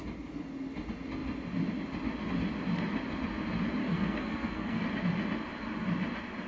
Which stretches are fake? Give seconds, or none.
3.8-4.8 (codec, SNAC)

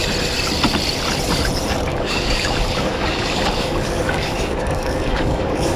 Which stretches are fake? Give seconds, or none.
1.9-5.8 (codec, DAC)

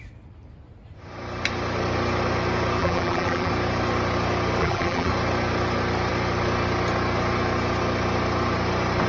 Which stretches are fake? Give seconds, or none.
2.8-3.5 (vocoder, BigVGAN v2); 4.6-5.1